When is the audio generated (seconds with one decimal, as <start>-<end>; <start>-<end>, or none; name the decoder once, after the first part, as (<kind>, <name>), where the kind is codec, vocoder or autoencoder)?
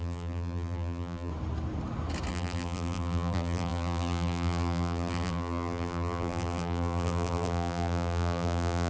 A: 0.0-1.3 (vocoder, BigVGAN v2); 2.3-8.9